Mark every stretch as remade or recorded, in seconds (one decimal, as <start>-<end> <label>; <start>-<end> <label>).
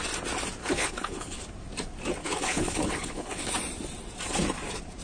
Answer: 0.0-0.6 recorded; 0.6-1.4 remade; 1.4-2.2 recorded; 2.2-3.5 remade; 3.5-5.0 recorded